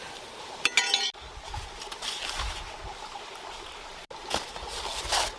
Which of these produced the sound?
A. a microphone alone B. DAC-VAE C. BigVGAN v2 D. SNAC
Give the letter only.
A